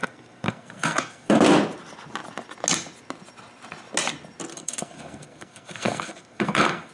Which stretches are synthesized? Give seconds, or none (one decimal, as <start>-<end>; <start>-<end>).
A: 0.0-1.4; 4.5-6.9